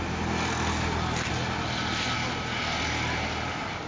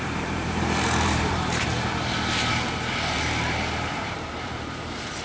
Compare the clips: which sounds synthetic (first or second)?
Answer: second